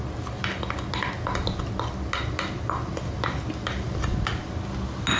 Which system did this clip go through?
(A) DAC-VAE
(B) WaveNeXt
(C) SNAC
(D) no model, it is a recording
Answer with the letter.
D